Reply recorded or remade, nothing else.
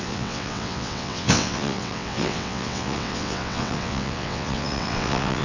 remade